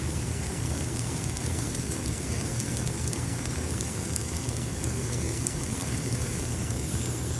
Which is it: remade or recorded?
remade